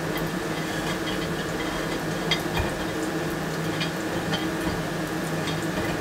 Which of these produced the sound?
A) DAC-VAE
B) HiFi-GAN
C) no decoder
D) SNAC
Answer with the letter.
C